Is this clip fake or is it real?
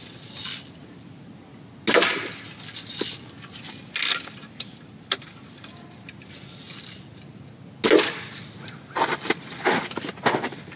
real